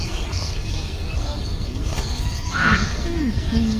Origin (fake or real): fake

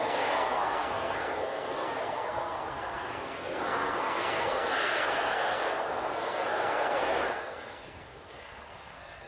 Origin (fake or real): fake